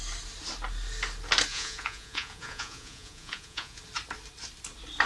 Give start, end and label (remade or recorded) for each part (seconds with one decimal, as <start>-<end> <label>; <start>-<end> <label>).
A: 0.0-1.5 recorded; 1.5-3.8 remade; 3.8-5.1 recorded